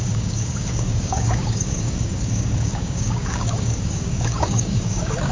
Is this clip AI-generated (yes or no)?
yes